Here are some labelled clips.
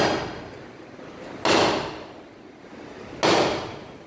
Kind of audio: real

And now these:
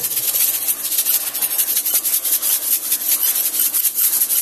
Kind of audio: real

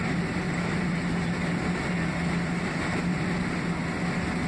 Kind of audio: real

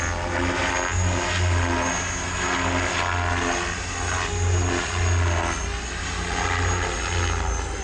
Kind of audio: real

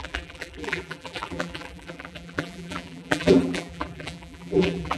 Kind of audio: fake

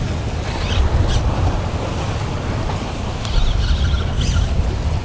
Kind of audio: real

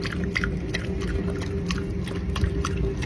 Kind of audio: real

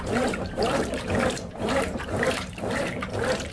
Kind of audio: fake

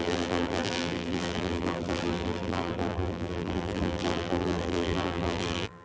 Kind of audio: fake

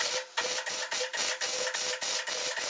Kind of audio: real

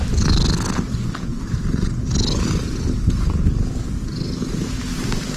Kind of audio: real